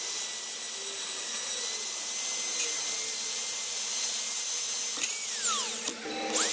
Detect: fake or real real